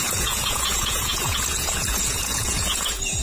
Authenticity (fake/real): fake